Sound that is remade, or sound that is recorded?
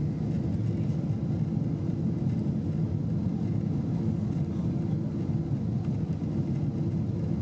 recorded